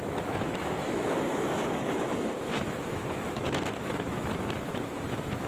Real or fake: fake